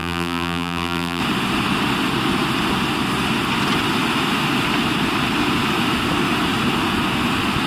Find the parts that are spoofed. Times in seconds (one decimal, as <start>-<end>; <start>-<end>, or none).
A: 0.0-1.2